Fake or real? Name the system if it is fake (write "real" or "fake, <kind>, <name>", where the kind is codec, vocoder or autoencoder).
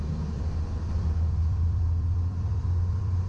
fake, vocoder, BigVGAN v2